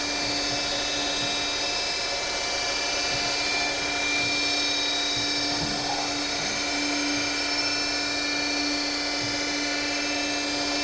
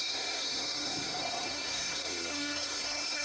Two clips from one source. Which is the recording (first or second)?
first